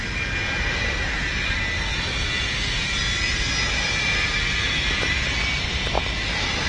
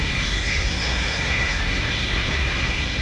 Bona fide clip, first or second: first